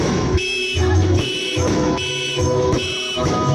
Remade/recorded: remade